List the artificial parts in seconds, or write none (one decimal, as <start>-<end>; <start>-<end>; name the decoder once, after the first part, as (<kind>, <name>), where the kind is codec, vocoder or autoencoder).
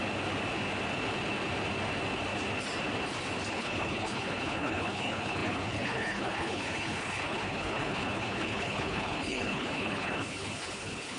3.5-11.2 (codec, HILCodec)